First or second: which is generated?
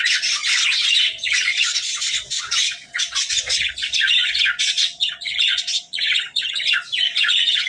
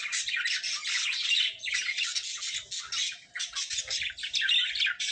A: first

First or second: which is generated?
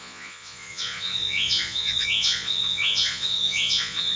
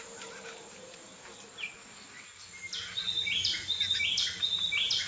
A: first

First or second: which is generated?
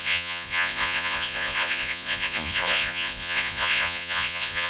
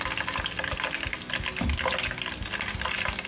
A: first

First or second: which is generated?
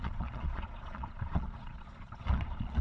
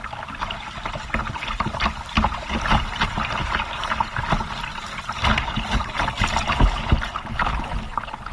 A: first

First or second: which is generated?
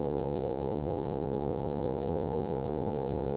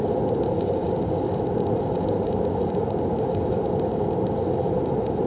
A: first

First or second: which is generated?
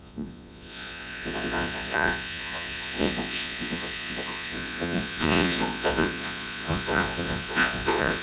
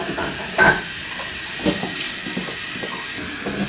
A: first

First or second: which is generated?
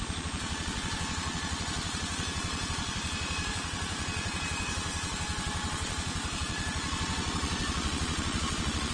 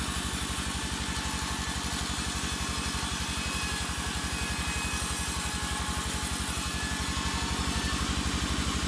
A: first